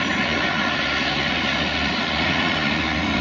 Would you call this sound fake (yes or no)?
yes